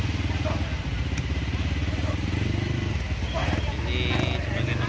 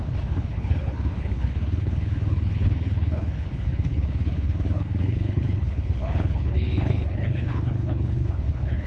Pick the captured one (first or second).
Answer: first